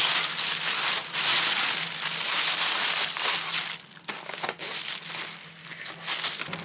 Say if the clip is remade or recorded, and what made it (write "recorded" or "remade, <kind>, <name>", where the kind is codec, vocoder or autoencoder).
recorded